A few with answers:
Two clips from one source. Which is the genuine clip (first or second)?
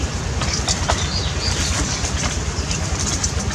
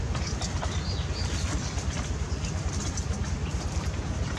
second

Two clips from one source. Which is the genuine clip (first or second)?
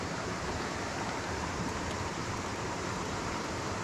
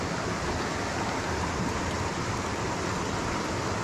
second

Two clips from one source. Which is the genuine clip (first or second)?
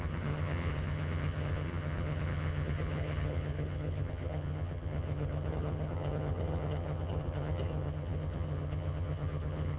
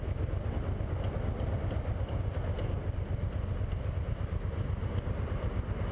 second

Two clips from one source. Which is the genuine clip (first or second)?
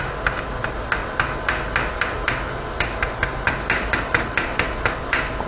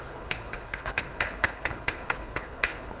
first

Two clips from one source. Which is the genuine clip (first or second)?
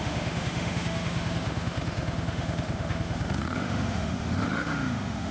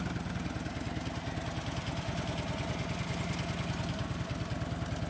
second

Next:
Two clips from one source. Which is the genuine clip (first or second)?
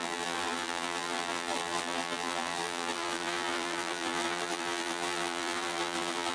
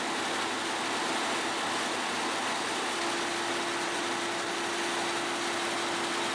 second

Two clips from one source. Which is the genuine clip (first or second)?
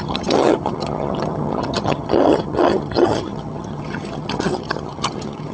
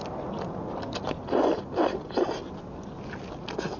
second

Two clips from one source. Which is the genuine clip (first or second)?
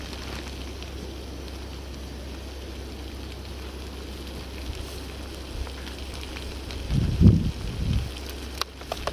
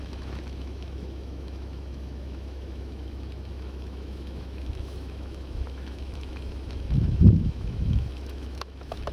first